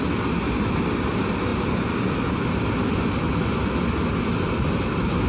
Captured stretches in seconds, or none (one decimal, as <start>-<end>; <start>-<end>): 0.0-5.3